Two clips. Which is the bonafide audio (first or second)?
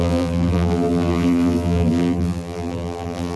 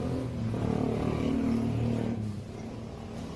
second